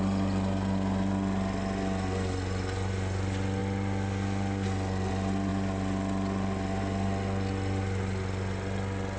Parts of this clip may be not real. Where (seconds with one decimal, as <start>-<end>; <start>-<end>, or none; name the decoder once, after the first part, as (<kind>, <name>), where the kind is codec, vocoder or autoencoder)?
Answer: none